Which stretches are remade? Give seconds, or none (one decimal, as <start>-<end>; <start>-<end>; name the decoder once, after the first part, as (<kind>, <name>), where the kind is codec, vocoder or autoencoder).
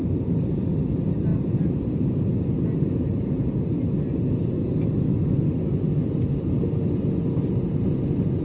none